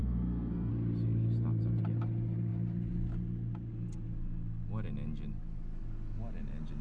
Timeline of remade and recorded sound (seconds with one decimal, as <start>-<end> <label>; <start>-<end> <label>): 0.0-0.7 remade; 0.7-6.8 recorded